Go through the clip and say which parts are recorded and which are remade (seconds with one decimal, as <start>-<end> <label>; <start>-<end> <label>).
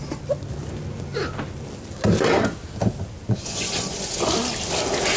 0.0-3.2 recorded; 3.2-4.3 remade; 4.3-5.2 recorded